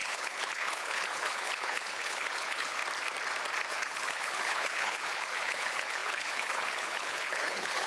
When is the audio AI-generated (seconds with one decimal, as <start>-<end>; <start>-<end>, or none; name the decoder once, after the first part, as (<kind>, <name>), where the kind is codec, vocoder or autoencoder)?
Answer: 0.0-2.8 (codec, HILCodec); 3.7-7.9